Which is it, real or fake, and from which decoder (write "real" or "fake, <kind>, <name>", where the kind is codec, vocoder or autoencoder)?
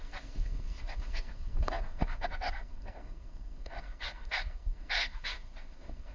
fake, codec, SNAC